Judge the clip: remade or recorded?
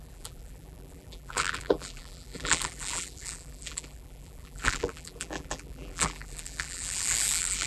remade